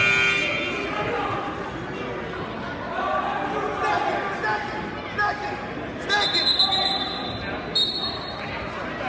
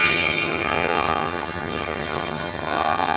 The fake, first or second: second